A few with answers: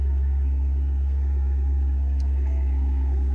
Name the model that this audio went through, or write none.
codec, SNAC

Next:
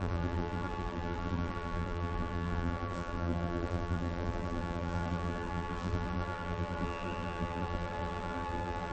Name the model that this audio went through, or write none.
vocoder, BigVGAN v2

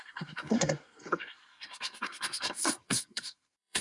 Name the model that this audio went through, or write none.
codec, SNAC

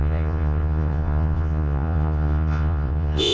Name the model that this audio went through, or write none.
vocoder, Vocos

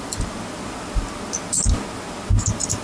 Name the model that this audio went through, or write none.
none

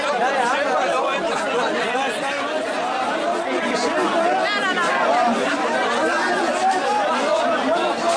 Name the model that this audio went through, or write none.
none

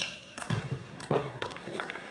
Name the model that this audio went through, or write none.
codec, SNAC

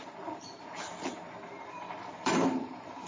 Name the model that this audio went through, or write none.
vocoder, BigVGAN v2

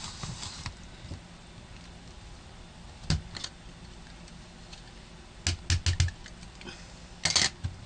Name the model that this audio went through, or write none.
none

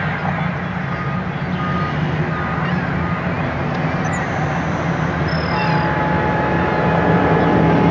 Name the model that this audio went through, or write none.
none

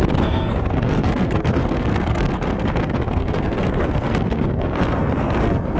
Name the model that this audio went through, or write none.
codec, SNAC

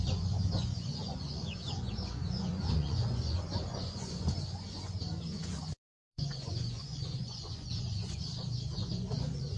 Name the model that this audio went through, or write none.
vocoder, Vocos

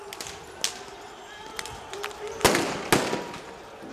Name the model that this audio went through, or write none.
none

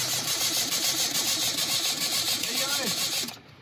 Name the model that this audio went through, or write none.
vocoder, BigVGAN v2